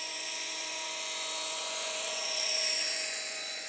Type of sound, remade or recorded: remade